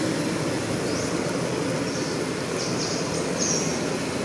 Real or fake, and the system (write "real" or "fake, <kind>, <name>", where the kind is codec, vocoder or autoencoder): real